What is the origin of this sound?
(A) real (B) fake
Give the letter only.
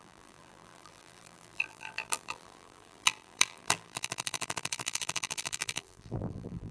B